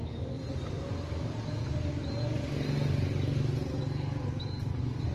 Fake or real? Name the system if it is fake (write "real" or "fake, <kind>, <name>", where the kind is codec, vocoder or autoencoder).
real